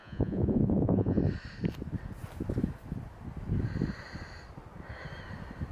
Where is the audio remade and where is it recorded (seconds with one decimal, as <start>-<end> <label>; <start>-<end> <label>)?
0.0-1.2 remade; 1.2-5.7 recorded